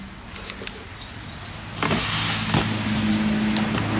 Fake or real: real